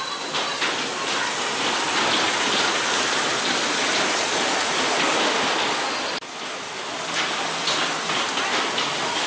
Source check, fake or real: real